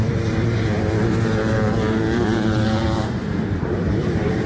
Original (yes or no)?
no